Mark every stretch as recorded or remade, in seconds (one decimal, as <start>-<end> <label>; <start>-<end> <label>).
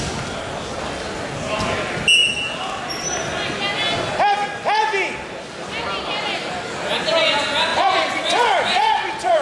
0.0-7.7 recorded; 7.7-9.4 remade